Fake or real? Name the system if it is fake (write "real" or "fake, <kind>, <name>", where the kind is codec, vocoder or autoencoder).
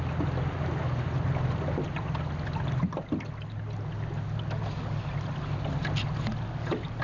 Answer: real